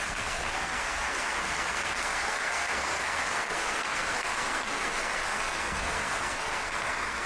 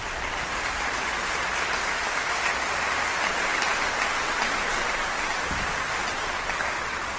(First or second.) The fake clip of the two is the first